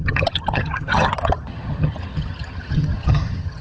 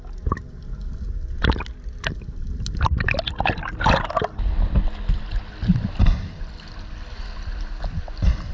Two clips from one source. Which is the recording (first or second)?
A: second